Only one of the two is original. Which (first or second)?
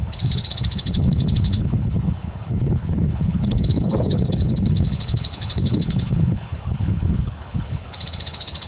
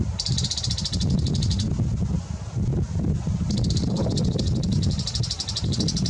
second